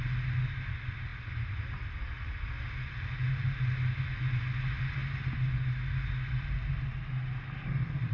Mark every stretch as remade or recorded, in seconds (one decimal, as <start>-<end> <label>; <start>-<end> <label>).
0.0-8.1 recorded